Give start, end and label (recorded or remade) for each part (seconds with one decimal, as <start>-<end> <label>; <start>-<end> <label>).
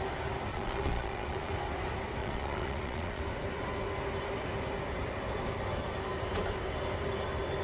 0.0-0.5 recorded; 0.5-1.5 remade; 1.5-2.2 recorded; 2.2-3.2 remade; 3.2-7.6 recorded